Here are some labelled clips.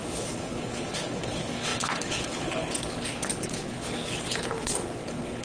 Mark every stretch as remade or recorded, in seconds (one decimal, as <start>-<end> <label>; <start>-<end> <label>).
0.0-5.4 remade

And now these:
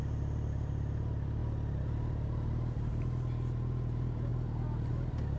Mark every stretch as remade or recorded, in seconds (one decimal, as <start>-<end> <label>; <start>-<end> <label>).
0.0-5.4 recorded

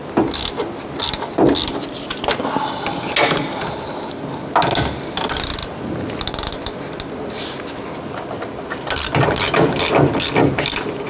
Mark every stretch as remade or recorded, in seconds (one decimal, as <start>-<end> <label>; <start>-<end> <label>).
0.0-11.1 recorded